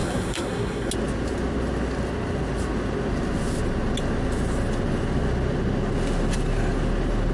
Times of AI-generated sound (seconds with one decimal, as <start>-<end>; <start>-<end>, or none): 0.0-0.9